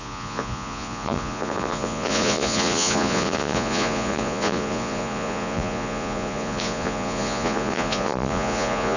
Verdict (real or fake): fake